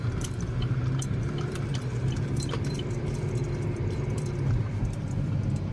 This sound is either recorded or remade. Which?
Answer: remade